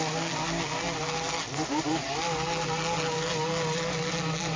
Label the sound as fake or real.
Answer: real